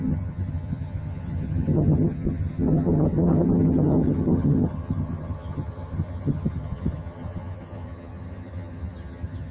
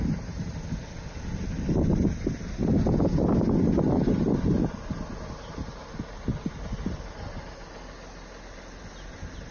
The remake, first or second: first